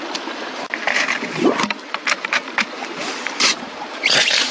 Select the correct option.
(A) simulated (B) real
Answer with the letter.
A